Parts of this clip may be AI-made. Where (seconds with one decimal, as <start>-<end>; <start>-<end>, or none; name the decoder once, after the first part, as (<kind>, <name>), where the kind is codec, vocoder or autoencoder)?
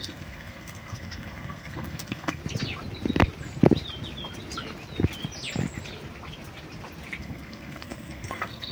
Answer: 0.0-2.4 (codec, SNAC); 7.2-8.7